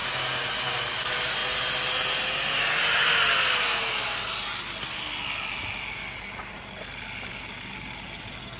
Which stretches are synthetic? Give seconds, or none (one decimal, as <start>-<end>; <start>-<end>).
none